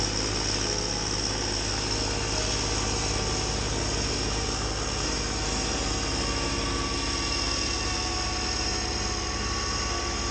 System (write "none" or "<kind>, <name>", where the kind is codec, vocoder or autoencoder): none